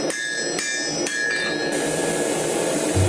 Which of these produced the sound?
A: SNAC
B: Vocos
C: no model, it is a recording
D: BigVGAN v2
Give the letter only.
C